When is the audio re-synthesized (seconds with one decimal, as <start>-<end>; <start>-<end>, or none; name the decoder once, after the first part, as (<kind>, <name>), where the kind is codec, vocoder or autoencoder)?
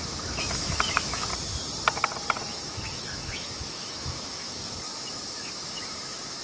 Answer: 0.0-1.3 (autoencoder, DAC-VAE); 2.5-6.4